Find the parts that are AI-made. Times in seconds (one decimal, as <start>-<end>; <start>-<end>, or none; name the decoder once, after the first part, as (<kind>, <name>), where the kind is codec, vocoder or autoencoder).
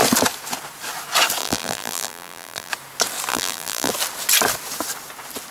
1.4-2.7 (vocoder, BigVGAN v2); 3.3-3.9